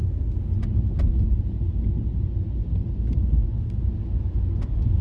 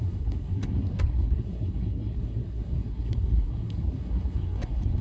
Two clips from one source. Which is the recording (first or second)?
first